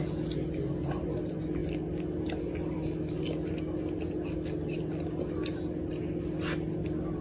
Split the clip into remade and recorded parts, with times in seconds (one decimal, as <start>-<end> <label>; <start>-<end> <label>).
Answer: 0.0-7.2 recorded

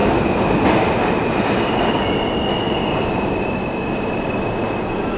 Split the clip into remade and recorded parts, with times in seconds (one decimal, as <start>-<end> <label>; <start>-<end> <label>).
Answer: 0.0-5.2 recorded